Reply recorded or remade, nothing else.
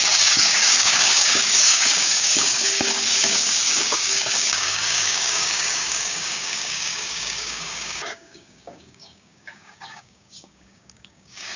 remade